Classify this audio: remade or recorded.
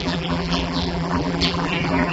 remade